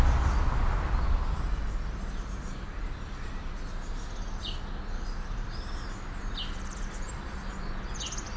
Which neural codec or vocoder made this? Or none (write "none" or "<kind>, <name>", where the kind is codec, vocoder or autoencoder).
none